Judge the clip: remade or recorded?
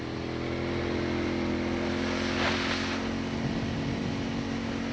recorded